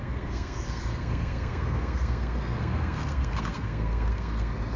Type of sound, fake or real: fake